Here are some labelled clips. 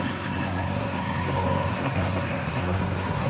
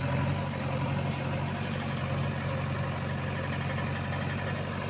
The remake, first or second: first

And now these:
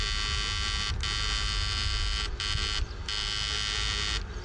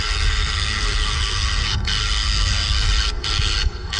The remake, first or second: second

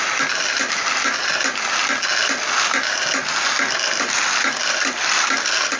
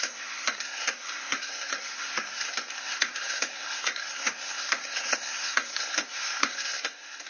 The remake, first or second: second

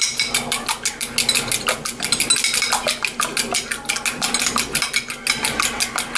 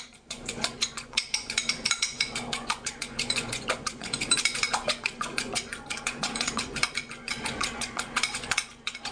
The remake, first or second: second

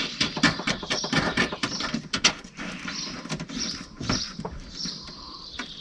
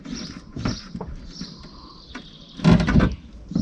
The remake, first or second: first